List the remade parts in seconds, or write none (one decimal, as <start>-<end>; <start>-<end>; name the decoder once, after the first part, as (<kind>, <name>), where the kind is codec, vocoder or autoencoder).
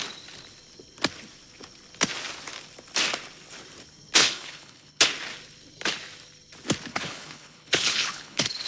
4.2-5.0 (codec, HILCodec); 6.9-8.7